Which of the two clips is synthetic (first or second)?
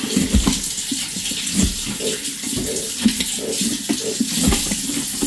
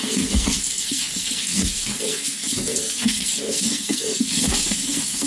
second